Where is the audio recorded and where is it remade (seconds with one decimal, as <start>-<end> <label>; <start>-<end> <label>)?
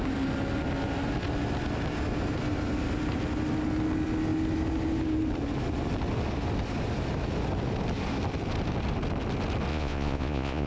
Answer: 0.0-9.7 recorded; 9.7-10.7 remade